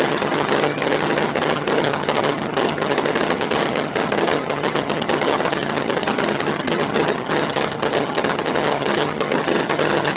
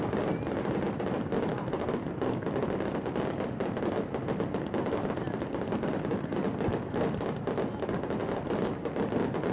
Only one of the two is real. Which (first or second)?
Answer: second